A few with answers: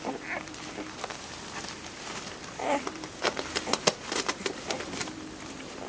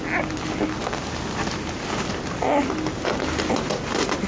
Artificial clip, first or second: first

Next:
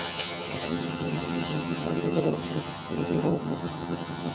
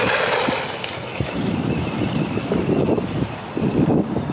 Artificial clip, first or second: first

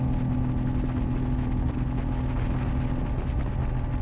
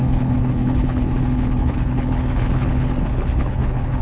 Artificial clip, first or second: second